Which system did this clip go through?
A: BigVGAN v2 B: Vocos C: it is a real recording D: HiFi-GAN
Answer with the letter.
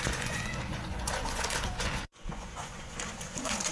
B